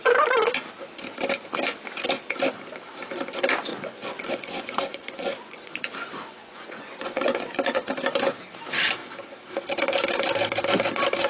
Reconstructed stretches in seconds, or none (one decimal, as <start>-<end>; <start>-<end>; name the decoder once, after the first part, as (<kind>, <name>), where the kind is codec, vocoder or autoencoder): 3.7-7.9 (vocoder, Vocos)